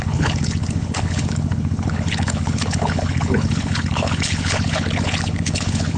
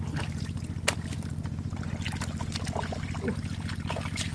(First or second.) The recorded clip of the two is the second